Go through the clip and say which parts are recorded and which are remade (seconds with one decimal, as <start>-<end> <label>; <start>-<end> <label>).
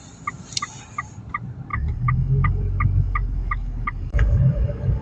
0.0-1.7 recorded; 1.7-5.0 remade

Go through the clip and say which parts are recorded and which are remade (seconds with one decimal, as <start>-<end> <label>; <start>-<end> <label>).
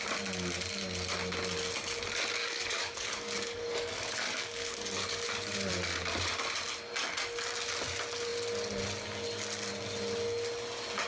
0.0-2.4 recorded; 2.4-5.7 remade; 5.7-11.1 recorded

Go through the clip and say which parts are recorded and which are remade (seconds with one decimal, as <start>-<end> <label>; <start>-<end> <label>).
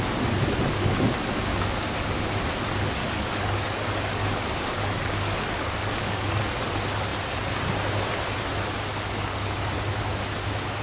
0.0-3.0 recorded; 3.0-6.4 remade; 6.4-8.9 recorded; 8.9-9.7 remade; 9.7-10.8 recorded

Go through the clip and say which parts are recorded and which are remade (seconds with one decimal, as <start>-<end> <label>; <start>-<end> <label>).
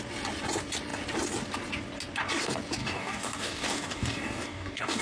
0.0-2.8 recorded; 2.8-5.0 remade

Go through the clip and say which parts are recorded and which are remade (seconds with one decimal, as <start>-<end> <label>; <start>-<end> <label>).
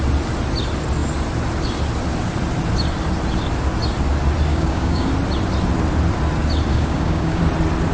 0.0-4.5 recorded; 4.5-5.1 remade; 5.1-6.7 recorded; 6.7-7.4 remade; 7.4-7.9 recorded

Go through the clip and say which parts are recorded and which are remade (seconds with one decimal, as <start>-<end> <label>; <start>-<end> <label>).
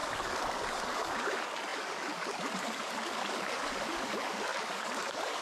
0.0-5.4 remade